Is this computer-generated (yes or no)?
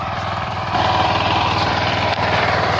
yes